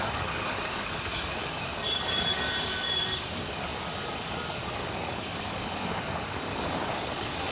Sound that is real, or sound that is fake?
fake